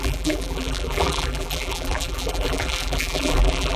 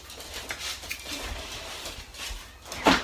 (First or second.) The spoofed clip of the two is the first